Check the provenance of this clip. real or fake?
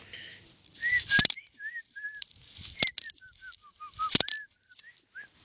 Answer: real